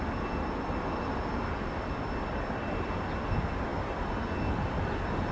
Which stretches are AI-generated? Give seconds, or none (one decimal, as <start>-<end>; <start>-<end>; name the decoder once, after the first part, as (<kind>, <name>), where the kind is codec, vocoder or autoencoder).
none